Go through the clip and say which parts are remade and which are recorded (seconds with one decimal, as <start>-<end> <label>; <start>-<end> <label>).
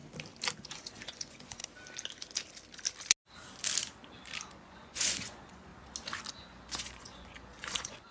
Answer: 0.0-0.6 recorded; 0.6-1.6 remade; 1.6-4.6 recorded; 4.6-5.7 remade; 5.7-6.3 recorded; 6.3-8.1 remade